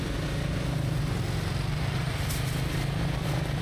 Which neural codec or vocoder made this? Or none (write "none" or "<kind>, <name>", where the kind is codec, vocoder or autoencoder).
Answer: none